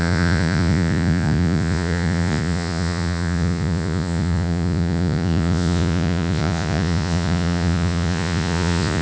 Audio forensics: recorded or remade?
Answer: remade